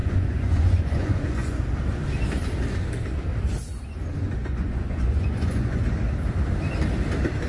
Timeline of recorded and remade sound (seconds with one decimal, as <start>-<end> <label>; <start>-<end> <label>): 0.0-1.6 remade; 1.6-4.4 recorded; 4.4-5.9 remade; 5.9-7.5 recorded

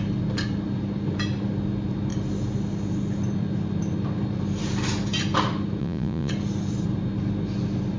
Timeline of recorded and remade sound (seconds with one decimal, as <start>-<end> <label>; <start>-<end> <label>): 0.0-5.8 recorded; 5.8-6.3 remade; 6.3-8.0 recorded

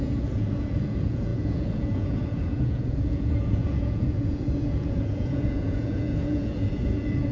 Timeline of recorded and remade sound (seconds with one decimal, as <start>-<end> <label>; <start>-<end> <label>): 0.0-7.3 remade

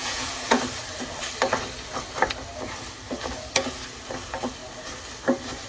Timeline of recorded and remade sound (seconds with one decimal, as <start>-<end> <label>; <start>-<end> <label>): 0.0-0.6 remade; 0.6-5.7 recorded